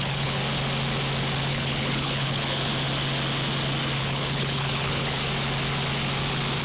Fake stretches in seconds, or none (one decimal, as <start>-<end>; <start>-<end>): 0.0-0.4; 1.5-2.7; 4.0-5.2